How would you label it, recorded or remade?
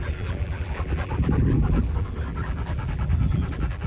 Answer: remade